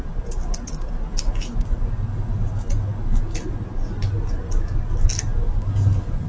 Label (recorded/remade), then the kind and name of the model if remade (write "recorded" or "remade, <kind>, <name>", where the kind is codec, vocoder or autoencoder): recorded